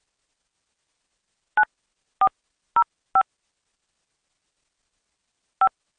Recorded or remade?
recorded